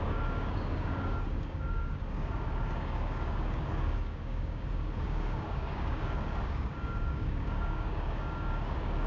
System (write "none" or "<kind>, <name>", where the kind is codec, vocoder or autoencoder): codec, DAC